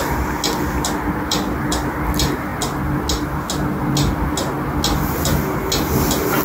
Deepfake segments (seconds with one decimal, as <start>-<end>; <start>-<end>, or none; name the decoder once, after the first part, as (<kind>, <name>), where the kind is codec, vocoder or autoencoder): none